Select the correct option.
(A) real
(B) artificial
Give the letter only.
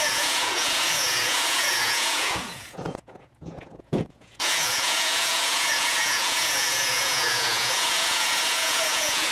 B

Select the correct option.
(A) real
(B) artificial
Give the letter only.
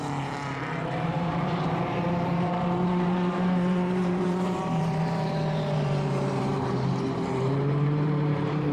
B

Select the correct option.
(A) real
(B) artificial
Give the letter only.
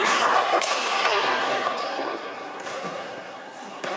B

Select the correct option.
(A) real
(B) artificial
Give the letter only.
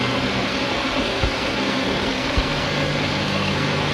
B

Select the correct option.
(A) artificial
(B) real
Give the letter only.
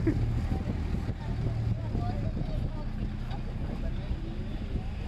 B